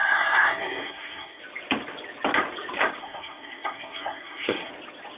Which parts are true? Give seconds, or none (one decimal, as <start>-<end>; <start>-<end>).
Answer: 1.4-3.0; 4.7-5.2